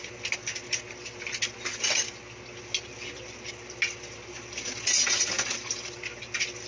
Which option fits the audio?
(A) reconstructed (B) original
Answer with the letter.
B